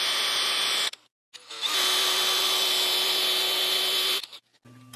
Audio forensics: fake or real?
real